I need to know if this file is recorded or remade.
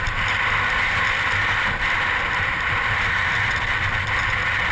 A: recorded